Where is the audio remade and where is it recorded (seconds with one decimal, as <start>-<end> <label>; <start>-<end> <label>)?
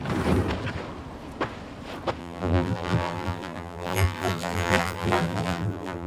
0.0-2.2 recorded; 2.2-6.1 remade